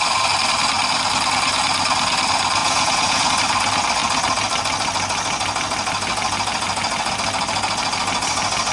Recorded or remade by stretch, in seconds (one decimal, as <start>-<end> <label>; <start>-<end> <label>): 0.0-2.6 recorded; 2.6-3.3 remade; 3.3-8.7 recorded